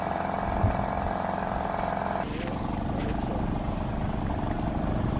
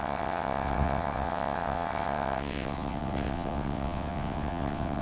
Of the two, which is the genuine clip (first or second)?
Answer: first